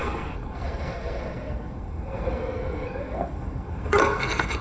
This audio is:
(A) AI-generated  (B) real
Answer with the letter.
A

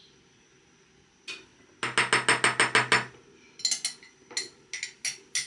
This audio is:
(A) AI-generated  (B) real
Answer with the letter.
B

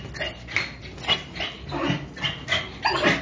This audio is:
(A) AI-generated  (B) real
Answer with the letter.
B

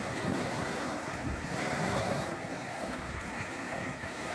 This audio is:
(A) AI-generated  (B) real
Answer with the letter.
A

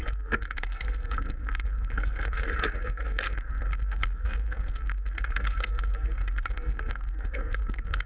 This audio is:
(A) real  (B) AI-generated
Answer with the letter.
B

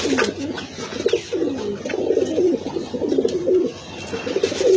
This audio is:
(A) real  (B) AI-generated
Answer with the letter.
A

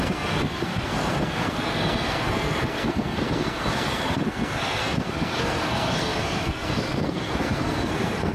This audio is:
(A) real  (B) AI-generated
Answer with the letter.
B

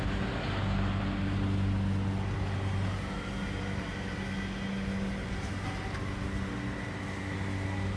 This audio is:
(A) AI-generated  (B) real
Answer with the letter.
B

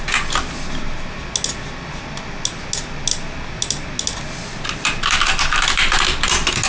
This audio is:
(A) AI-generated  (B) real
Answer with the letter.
B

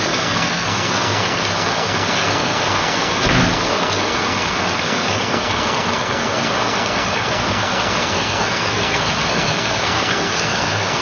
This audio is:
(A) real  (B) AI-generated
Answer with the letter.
B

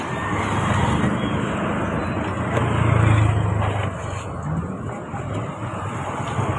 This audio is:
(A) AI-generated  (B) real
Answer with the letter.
B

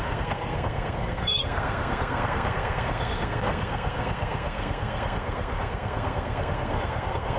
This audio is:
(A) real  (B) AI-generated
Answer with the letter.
B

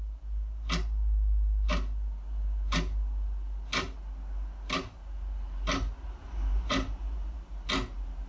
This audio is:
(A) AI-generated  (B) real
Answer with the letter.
B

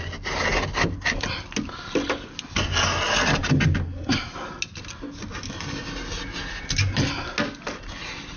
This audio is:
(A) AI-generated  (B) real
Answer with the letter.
B